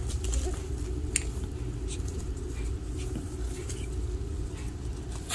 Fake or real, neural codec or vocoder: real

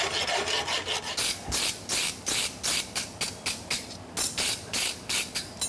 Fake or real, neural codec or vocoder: real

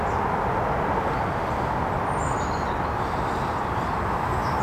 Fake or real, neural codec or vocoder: real